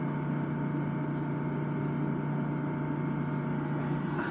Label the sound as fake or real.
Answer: real